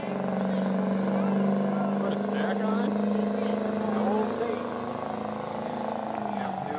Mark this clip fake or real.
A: real